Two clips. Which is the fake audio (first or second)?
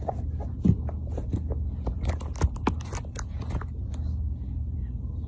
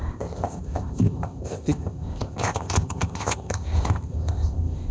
second